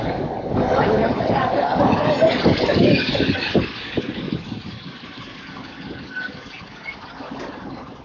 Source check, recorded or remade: remade